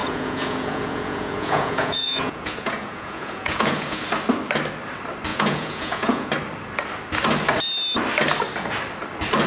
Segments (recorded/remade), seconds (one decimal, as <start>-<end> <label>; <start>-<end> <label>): 0.0-4.0 remade; 4.0-5.3 recorded; 5.3-6.3 remade; 6.3-9.5 recorded